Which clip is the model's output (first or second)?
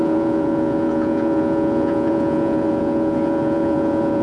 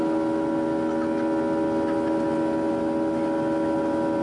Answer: first